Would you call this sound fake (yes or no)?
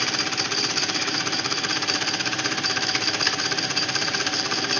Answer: yes